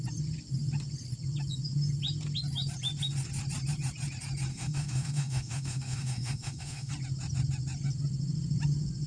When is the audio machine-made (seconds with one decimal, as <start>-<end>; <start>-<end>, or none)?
4.5-6.9